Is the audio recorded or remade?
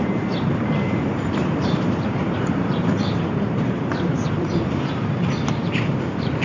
remade